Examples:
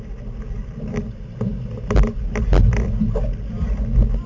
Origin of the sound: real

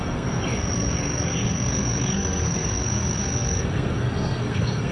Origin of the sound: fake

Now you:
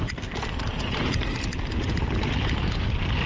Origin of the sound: real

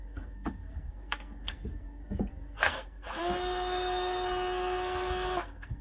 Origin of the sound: fake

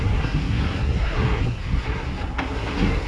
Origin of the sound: fake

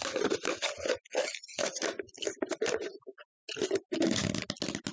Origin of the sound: real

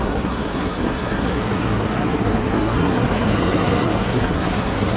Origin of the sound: fake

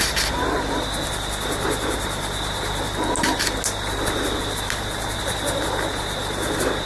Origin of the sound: real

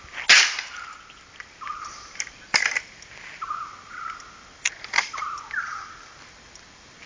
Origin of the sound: real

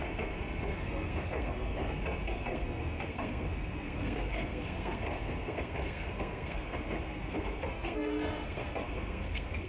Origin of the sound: fake